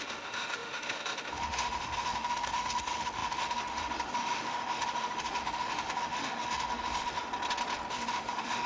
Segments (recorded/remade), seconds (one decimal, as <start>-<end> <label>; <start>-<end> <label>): 0.0-7.3 remade; 7.3-7.9 recorded; 7.9-8.7 remade